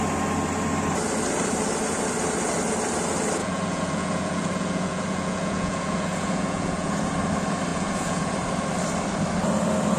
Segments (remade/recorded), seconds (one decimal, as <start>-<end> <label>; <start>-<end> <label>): 0.0-3.4 recorded; 3.4-7.0 remade; 7.0-7.7 recorded; 7.7-8.3 remade; 8.3-10.0 recorded